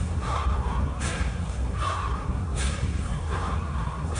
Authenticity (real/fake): fake